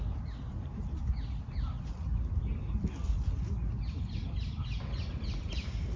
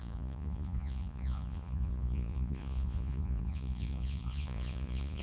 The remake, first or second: second